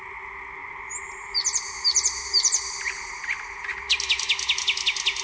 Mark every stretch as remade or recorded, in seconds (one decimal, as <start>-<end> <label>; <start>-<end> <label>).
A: 0.0-5.2 recorded